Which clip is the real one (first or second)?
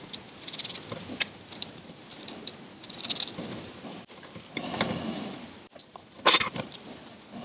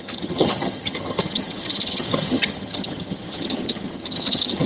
first